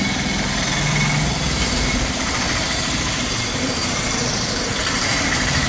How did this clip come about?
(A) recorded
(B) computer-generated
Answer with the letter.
B